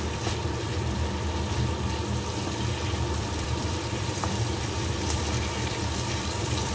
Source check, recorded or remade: remade